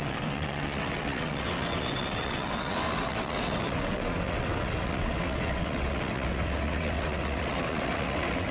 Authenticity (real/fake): fake